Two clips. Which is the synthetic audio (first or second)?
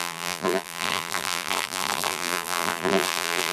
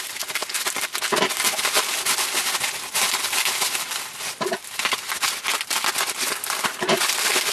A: first